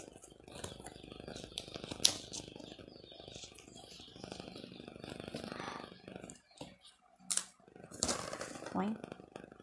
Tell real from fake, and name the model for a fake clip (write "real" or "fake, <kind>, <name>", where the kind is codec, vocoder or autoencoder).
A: real